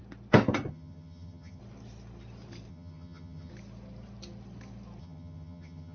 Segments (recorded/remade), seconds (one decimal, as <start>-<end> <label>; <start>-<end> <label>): 0.0-0.7 recorded; 0.7-1.6 remade; 1.6-2.7 recorded; 2.7-3.5 remade; 3.5-5.0 recorded; 5.0-5.9 remade